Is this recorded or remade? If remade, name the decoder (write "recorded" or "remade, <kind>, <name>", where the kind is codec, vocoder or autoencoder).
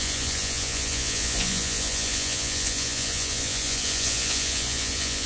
remade, vocoder, Vocos